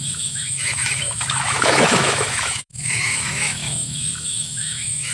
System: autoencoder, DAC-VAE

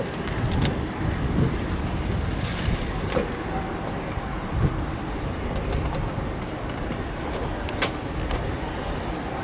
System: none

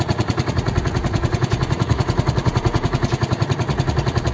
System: vocoder, Vocos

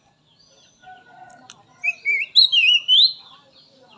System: none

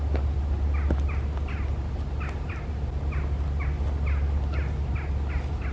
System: none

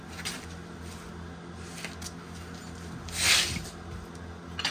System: none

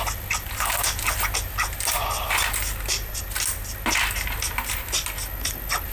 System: none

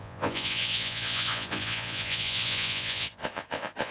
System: vocoder, Vocos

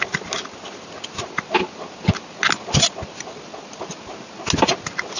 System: none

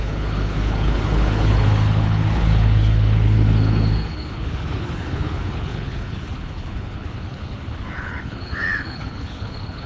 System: codec, HILCodec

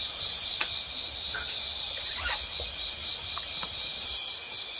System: none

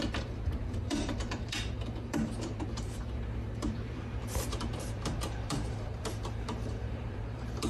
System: vocoder, BigVGAN v2